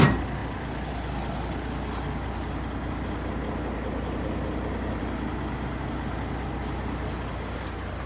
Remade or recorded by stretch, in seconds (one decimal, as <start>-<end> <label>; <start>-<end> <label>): 0.0-8.1 recorded